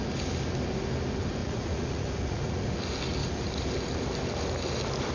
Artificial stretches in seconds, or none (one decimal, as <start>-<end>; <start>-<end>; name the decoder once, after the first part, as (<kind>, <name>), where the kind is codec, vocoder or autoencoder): 1.4-2.7 (vocoder, Vocos); 3.2-3.7